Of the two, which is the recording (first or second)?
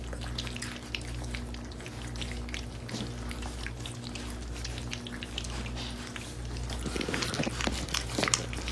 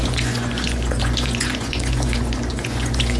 first